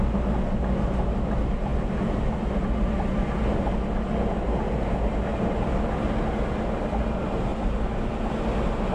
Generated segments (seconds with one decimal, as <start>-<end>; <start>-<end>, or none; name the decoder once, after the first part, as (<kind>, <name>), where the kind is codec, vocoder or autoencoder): none